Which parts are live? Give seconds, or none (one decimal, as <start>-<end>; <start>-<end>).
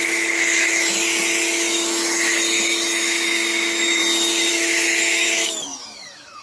4.0-4.5